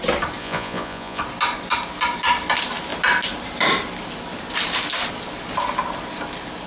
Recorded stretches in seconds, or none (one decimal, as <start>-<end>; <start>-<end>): 0.0-0.4; 1.2-6.7